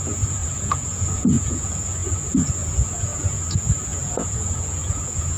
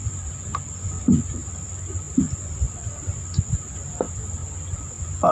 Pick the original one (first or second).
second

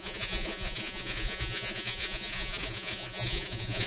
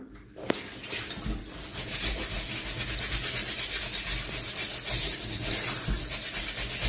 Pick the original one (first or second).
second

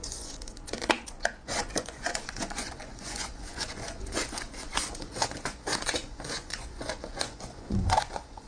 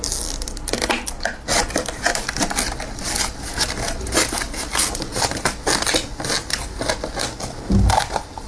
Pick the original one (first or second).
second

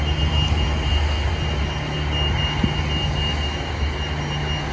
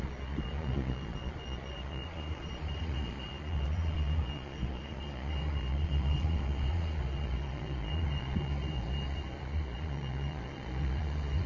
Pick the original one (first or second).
first